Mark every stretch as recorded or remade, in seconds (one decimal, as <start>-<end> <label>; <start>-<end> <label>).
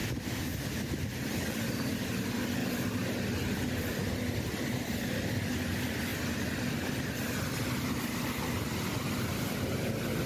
0.0-0.9 remade; 0.9-10.3 recorded